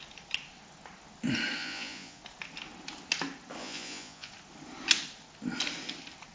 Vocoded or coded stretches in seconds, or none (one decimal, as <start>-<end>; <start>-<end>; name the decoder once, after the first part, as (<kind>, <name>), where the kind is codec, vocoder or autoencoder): 1.6-2.2 (vocoder, Vocos); 3.6-4.3